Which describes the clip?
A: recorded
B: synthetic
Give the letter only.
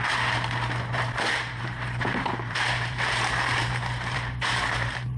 B